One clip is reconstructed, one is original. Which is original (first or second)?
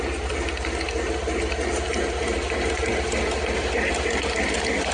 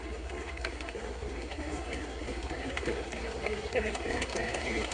first